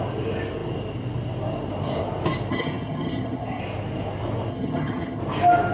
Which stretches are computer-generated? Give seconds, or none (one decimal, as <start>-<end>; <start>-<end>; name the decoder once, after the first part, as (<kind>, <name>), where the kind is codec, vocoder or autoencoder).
2.5-3.6 (vocoder, HiFi-GAN); 4.5-5.2